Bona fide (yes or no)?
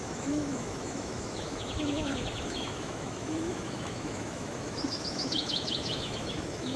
no